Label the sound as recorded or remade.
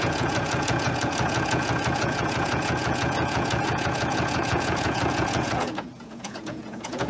remade